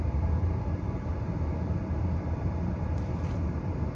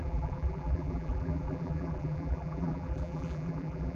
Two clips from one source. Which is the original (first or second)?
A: first